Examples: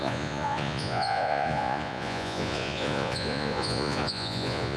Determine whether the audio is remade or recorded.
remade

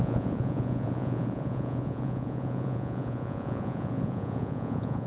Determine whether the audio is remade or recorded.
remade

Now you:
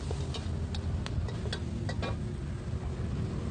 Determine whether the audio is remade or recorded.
recorded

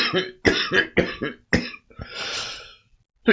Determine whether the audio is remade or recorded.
recorded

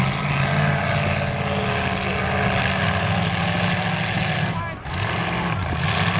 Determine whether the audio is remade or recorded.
recorded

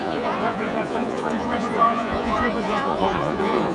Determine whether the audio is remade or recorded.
remade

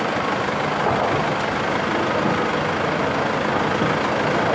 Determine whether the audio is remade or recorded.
recorded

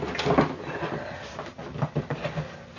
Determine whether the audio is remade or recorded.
recorded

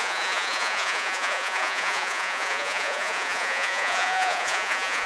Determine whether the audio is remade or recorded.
remade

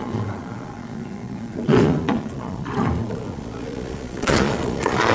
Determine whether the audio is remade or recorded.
remade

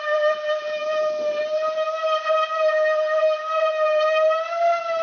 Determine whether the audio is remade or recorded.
recorded